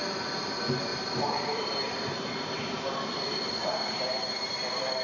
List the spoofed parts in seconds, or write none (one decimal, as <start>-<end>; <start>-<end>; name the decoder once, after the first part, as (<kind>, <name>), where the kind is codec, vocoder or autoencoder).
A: 0.9-3.0 (vocoder, BigVGAN v2); 3.6-4.6